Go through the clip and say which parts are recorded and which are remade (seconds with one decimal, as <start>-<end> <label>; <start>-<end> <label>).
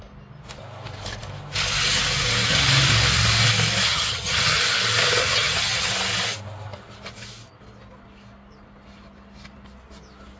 0.0-3.9 recorded; 3.9-4.6 remade; 4.6-5.2 recorded; 5.2-5.9 remade; 5.9-10.4 recorded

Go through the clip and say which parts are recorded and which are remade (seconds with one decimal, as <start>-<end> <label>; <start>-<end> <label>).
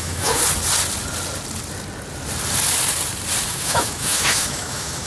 0.0-0.4 remade; 0.4-3.5 recorded; 3.5-5.1 remade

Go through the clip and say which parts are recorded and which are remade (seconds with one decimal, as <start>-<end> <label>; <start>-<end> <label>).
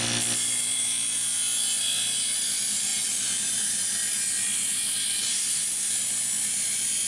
0.0-5.3 recorded; 5.3-5.9 remade; 5.9-7.1 recorded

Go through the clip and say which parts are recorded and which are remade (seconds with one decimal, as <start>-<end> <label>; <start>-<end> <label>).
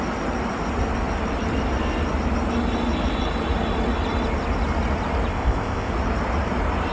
0.0-5.3 recorded; 5.3-5.9 remade; 5.9-6.9 recorded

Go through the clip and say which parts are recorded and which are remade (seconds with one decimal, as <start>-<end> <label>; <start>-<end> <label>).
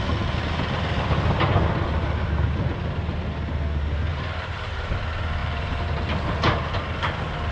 0.0-4.1 recorded; 4.1-4.9 remade; 4.9-5.4 recorded; 5.4-6.0 remade; 6.0-7.5 recorded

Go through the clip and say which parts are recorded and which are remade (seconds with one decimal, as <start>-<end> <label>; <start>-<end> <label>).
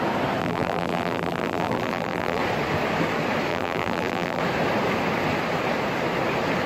0.0-0.4 recorded; 0.4-2.4 remade; 2.4-3.5 recorded; 3.5-4.4 remade; 4.4-6.7 recorded